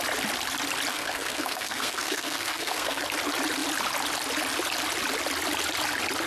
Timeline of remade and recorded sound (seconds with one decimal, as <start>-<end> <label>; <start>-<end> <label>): 0.0-0.9 recorded; 0.9-3.0 remade; 3.0-6.3 recorded